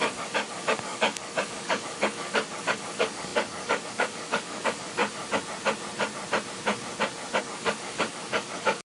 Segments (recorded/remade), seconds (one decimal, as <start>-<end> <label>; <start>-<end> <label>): 0.0-5.0 remade; 5.0-7.4 recorded; 7.4-8.8 remade